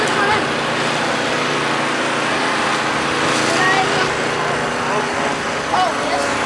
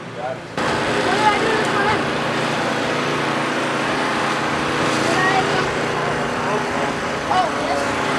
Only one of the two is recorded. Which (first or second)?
first